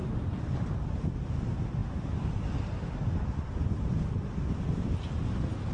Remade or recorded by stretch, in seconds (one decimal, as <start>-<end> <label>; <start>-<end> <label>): 0.0-5.7 recorded